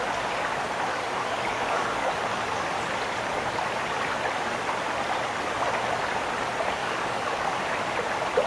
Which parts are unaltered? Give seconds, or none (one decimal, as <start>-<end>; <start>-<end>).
0.0-0.9; 2.1-6.8; 7.6-8.5